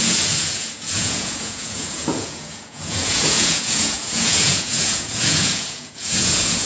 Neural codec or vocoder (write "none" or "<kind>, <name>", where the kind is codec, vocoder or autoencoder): vocoder, Vocos